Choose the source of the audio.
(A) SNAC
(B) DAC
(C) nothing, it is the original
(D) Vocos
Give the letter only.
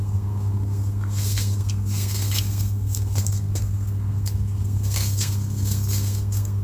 A